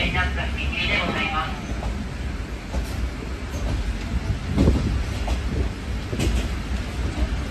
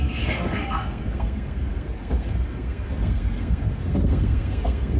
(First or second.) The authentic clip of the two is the first